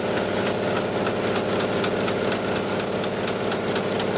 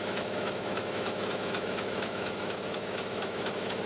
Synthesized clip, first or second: second